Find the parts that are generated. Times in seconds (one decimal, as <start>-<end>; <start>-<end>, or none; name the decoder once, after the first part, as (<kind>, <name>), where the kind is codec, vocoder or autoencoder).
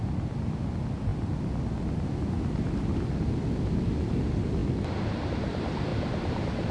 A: none